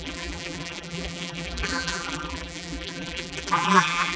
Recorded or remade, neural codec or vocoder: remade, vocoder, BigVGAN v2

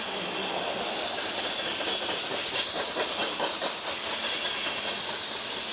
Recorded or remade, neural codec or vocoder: recorded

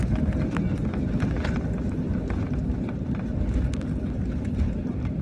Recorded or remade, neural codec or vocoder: recorded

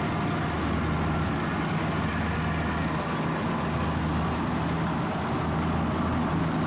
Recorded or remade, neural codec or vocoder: recorded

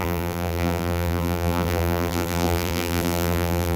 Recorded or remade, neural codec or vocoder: remade, vocoder, BigVGAN v2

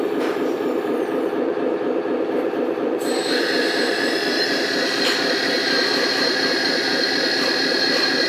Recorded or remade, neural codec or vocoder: remade, vocoder, BigVGAN v2